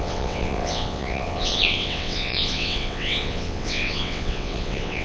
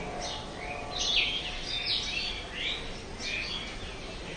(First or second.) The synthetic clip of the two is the first